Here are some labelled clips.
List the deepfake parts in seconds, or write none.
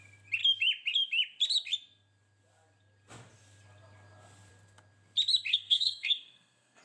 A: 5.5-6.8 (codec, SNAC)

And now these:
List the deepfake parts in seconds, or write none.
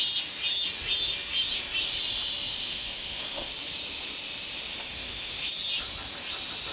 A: 2.5-3.5 (autoencoder, DAC-VAE); 4.8-5.5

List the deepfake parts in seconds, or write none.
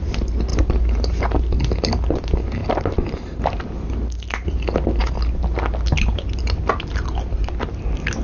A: 0.5-1.4 (vocoder, BigVGAN v2); 2.6-3.1